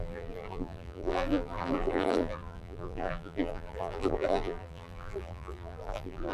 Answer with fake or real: fake